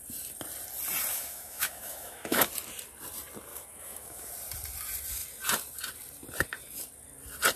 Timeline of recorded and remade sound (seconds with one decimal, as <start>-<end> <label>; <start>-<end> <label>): 0.0-1.1 recorded; 1.1-2.5 remade; 2.5-3.5 recorded; 3.5-4.3 remade; 4.3-7.6 recorded